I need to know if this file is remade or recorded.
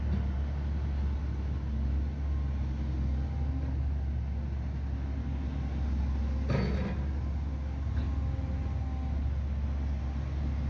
recorded